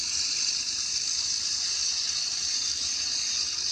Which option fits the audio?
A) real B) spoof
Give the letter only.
A